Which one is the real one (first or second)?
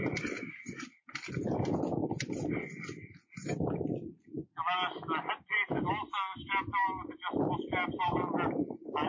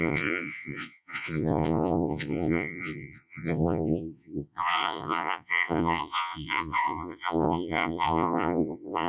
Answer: first